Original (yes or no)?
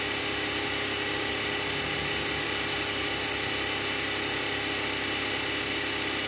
yes